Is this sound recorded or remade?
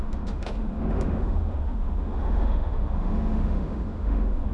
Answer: remade